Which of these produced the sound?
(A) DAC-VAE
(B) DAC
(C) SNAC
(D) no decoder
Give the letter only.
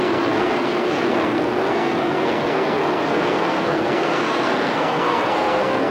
C